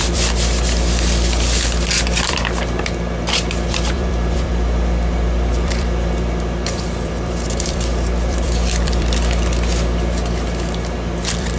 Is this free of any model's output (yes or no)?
no